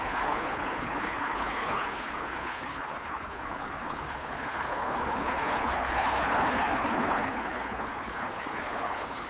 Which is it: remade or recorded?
remade